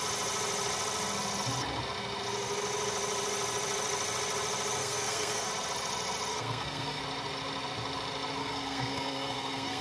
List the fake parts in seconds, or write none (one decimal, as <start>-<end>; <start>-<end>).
4.8-5.5; 6.3-7.0; 8.4-9.8